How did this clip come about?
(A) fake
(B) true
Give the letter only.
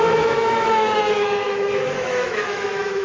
A